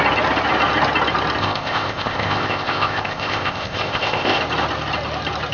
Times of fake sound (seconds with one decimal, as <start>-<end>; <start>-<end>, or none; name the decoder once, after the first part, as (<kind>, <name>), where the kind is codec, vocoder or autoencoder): 1.4-4.4 (codec, ZipCodec)